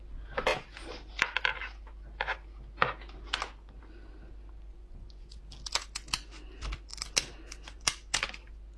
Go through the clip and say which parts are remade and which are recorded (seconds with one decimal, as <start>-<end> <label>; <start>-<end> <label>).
0.0-4.7 recorded; 4.7-5.4 remade; 5.4-8.8 recorded